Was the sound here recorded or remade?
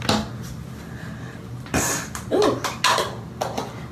recorded